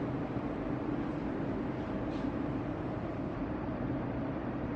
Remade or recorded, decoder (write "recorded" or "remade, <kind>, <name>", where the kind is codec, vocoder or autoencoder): recorded